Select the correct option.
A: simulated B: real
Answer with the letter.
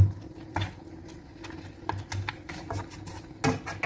B